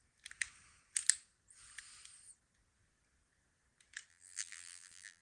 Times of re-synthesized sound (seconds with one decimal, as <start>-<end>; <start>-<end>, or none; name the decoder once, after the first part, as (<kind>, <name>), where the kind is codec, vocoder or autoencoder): 4.1-5.2 (vocoder, BigVGAN v2)

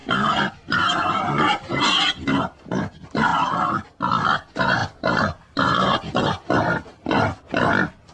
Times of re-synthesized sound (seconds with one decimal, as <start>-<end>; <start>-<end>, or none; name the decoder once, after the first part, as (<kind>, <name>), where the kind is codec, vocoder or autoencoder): 0.0-1.8 (vocoder, BigVGAN v2); 3.3-4.0; 4.8-6.5